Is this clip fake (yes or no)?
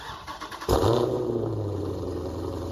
yes